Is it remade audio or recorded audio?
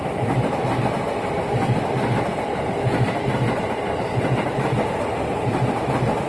recorded